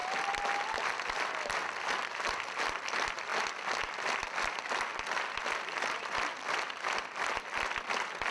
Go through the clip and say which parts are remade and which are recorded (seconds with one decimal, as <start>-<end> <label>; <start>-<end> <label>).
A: 0.0-8.3 recorded